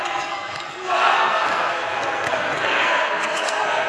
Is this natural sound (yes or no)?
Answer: no